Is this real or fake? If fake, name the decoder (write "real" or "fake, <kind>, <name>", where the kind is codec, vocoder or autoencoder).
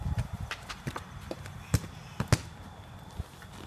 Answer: real